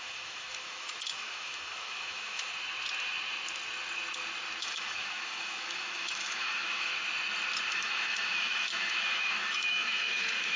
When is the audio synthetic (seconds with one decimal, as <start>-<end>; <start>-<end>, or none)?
0.0-2.5; 4.6-6.9; 7.7-10.6